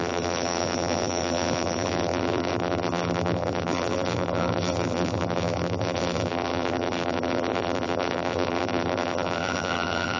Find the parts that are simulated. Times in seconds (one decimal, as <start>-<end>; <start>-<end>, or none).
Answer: 0.0-10.2